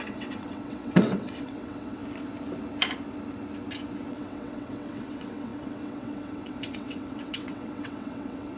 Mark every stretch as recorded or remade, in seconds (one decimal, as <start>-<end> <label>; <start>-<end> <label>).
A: 0.0-2.0 remade; 2.0-4.1 recorded; 4.1-8.6 remade